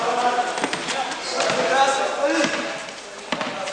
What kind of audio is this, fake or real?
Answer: real